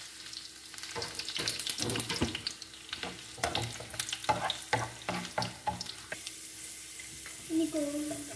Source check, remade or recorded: recorded